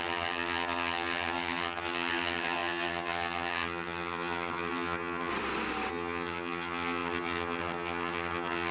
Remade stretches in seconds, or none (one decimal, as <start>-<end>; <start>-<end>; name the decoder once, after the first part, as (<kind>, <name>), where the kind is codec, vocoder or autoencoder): 0.0-5.3 (vocoder, HiFi-GAN); 5.9-8.7